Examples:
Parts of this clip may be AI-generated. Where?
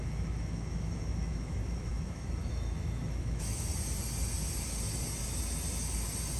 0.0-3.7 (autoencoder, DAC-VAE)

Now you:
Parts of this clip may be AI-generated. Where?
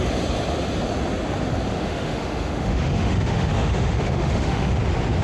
1.7-4.8 (autoencoder, DAC-VAE)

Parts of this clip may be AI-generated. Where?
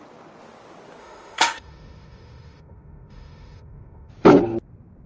1.0-4.1 (autoencoder, DAC-VAE)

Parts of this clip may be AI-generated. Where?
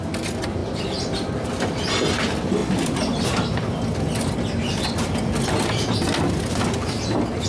none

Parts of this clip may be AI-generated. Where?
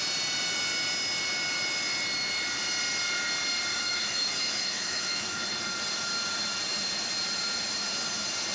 3.7-5.5 (autoencoder, DAC-VAE)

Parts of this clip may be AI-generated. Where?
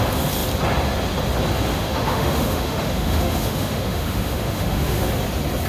1.7-5.1 (autoencoder, DAC-VAE)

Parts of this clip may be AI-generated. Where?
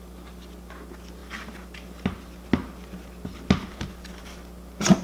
none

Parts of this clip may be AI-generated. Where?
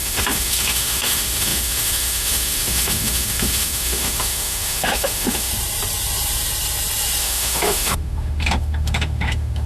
0.0-5.5 (autoencoder, DAC-VAE); 7.2-9.7